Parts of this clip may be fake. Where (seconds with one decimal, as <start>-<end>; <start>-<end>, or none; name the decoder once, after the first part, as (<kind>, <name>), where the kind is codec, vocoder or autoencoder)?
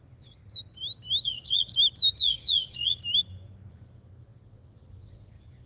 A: 0.0-0.4 (vocoder, Vocos); 1.2-1.7; 2.2-3.0; 3.7-5.7